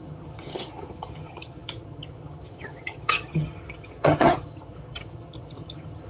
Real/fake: fake